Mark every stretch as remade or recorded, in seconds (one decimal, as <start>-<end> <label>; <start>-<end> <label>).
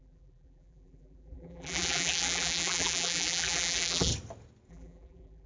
0.0-4.1 remade; 4.1-4.7 recorded; 4.7-5.5 remade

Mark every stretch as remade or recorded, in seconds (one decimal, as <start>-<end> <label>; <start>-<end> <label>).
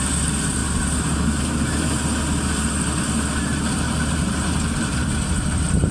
0.0-0.6 remade; 0.6-3.7 recorded; 3.7-5.9 remade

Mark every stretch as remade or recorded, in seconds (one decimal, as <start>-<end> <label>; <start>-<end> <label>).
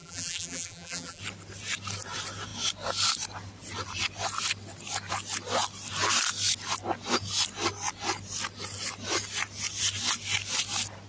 0.0-1.2 remade; 1.2-11.1 recorded